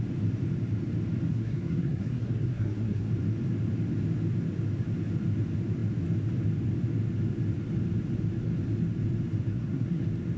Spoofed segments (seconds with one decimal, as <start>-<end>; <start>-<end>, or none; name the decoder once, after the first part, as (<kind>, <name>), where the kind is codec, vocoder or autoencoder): 1.3-3.1 (codec, SNAC); 9.5-10.0